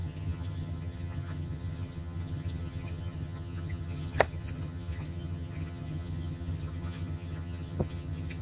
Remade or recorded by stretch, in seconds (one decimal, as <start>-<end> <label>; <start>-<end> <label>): 0.0-8.4 remade